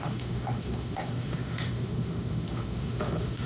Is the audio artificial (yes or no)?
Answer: yes